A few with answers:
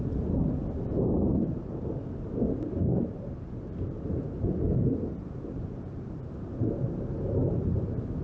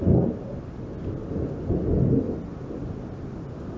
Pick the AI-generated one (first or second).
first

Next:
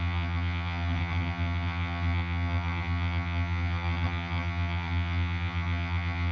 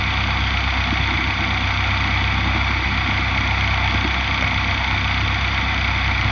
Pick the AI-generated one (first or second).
first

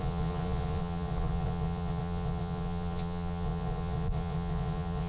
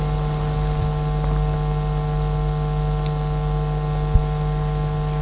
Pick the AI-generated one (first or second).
first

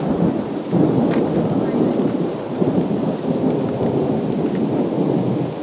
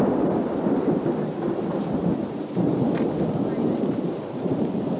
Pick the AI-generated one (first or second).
second